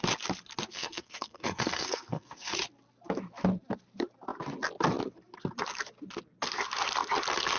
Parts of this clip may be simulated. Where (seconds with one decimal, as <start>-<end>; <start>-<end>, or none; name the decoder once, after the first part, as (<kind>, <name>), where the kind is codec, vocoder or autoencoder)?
0.7-2.5 (codec, SNAC)

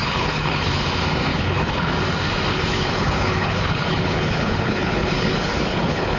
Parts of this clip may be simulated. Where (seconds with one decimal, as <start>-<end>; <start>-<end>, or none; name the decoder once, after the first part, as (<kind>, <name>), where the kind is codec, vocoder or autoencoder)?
0.0-0.8 (codec, HILCodec); 1.3-1.9; 2.5-6.2